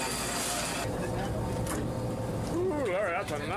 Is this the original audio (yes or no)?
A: yes